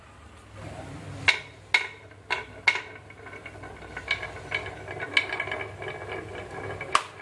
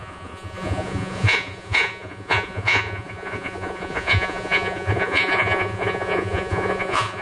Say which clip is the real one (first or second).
first